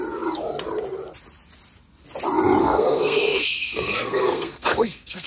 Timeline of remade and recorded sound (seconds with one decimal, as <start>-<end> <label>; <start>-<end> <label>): 0.0-2.6 recorded; 2.6-5.3 remade